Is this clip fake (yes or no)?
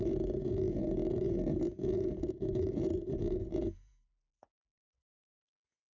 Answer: yes